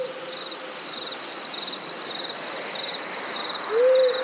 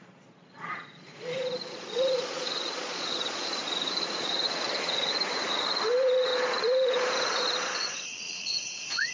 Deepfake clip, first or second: second